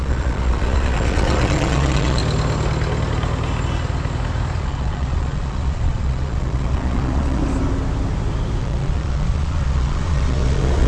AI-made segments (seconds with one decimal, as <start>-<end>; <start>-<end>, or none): 0.0-2.2; 4.6-7.4; 8.6-10.9